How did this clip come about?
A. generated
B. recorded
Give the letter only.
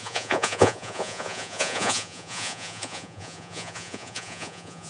A